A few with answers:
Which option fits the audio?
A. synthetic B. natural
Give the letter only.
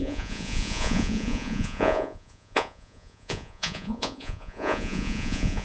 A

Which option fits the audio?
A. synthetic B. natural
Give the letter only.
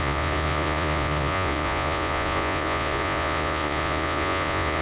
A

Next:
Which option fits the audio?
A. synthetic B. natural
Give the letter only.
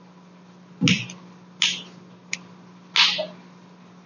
B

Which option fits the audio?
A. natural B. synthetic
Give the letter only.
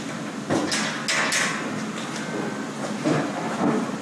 A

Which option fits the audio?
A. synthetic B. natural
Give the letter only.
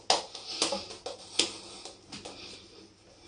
B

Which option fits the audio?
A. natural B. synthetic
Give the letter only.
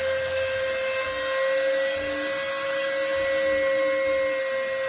A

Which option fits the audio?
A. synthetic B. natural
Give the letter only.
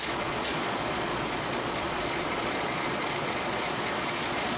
A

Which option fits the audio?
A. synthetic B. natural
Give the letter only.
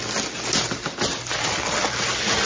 B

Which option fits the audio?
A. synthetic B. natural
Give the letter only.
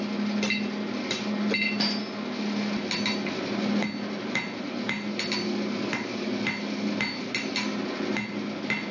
B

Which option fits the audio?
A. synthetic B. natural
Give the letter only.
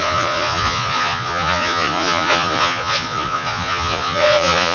A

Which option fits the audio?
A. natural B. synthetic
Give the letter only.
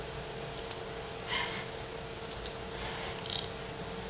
A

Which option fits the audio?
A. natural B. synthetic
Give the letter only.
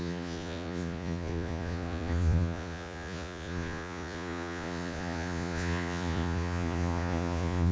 B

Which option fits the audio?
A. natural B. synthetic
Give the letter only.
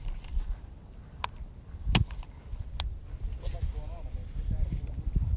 A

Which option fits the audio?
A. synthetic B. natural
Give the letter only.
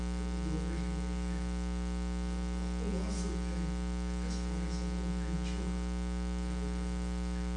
B